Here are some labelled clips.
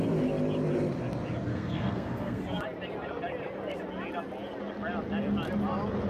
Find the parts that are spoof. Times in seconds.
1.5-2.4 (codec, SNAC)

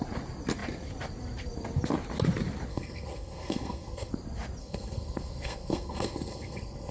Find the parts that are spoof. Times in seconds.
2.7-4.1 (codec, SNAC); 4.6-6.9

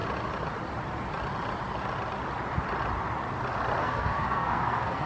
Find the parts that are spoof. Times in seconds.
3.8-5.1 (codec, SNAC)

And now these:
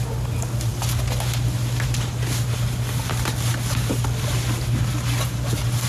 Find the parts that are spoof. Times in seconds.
none

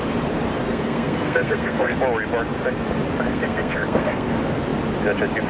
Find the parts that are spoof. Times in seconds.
0.6-2.0 (codec, SNAC); 3.3-4.3

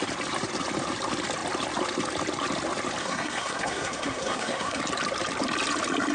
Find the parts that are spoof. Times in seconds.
3.0-4.8 (codec, SNAC)

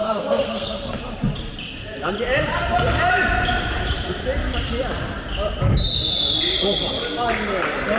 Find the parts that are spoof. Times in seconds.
0.0-1.0 (codec, SNAC)

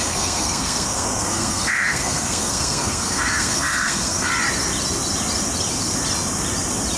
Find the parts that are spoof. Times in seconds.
0.0-4.3 (codec, SNAC)